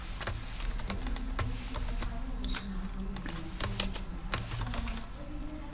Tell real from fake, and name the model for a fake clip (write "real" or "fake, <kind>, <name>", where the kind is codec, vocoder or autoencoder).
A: real